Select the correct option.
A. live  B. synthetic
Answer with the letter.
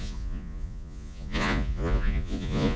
B